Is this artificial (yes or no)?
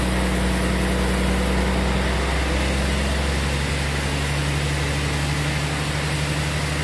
no